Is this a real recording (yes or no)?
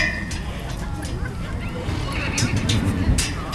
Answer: yes